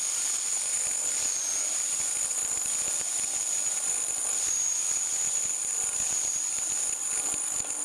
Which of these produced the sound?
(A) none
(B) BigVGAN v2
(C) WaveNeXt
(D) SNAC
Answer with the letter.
A